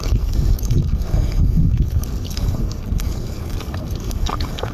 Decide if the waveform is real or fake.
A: fake